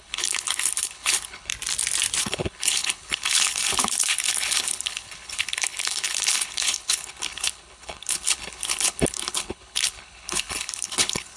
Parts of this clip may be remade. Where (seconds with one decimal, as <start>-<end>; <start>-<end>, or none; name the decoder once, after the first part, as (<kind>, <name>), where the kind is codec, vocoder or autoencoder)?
0.0-1.5 (codec, HILCodec); 2.2-11.4